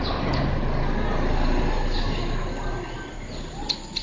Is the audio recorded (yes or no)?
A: yes